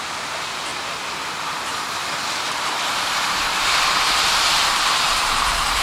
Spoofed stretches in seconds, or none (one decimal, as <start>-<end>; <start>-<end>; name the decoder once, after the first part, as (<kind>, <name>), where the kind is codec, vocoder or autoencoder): 0.0-0.7 (vocoder, BigVGAN v2); 1.6-2.0; 2.5-5.8